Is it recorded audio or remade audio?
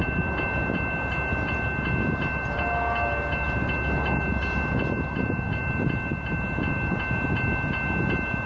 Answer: recorded